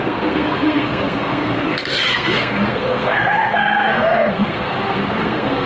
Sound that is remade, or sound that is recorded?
remade